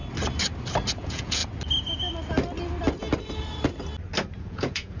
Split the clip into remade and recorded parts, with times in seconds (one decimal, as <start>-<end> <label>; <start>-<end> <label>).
0.0-0.9 recorded; 0.9-1.4 remade; 1.4-4.4 recorded; 4.4-5.0 remade